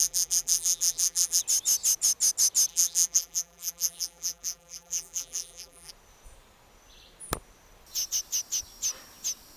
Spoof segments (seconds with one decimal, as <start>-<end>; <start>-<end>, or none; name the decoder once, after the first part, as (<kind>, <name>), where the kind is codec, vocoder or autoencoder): 0.0-1.4 (vocoder, BigVGAN v2); 2.7-5.9